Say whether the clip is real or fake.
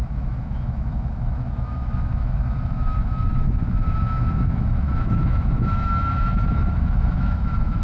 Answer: fake